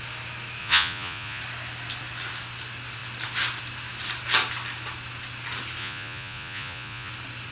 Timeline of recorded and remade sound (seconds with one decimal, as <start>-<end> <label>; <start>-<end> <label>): 0.0-0.6 recorded; 0.6-1.4 remade; 1.4-5.8 recorded; 5.8-7.1 remade; 7.1-7.5 recorded